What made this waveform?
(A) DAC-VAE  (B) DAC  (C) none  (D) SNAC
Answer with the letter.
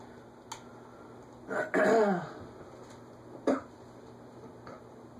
C